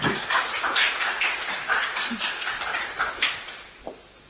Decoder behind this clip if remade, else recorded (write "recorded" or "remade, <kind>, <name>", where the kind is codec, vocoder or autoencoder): recorded